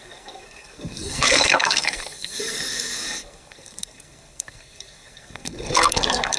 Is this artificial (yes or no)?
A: yes